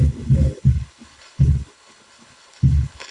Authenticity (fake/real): fake